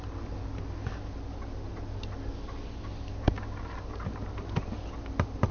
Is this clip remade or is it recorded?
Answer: recorded